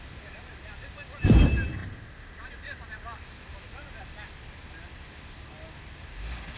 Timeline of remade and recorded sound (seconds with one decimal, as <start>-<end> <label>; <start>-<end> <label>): 0.0-6.6 remade